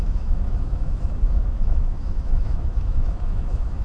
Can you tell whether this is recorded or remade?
remade